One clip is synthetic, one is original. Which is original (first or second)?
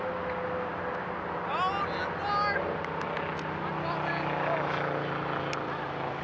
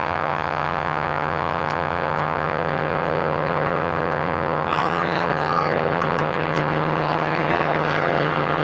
first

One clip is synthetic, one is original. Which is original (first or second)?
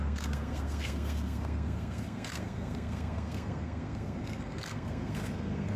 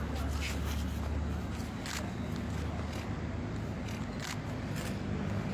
second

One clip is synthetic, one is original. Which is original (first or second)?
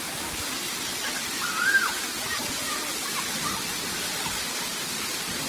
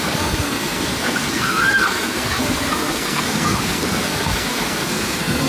first